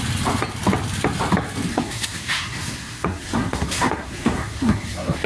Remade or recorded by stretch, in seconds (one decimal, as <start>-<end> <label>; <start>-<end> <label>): 0.0-1.7 recorded; 1.7-5.3 remade